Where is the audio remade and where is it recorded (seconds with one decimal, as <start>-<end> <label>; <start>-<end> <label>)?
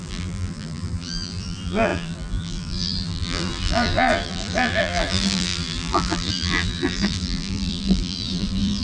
0.0-8.8 remade